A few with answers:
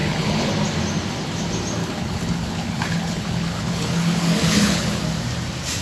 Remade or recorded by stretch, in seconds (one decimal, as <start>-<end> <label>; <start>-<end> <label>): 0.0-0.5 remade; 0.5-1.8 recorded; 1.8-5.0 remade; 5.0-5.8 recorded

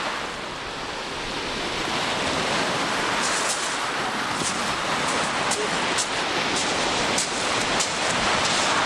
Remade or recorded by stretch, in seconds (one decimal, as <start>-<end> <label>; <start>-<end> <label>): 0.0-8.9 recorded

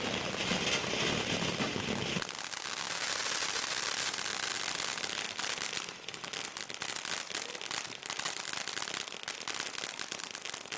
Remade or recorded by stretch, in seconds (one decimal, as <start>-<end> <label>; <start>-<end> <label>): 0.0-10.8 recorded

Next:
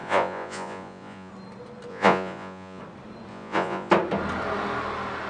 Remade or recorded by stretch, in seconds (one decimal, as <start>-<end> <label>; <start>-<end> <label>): 0.0-1.3 remade; 1.3-1.9 recorded; 1.9-2.8 remade; 2.8-3.3 recorded; 3.3-3.9 remade; 3.9-5.3 recorded

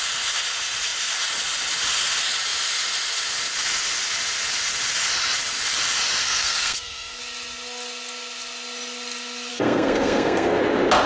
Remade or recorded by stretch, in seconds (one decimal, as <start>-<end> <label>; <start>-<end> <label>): 0.0-6.2 recorded; 6.2-7.2 remade; 7.2-9.5 recorded; 9.5-10.6 remade; 10.6-11.1 recorded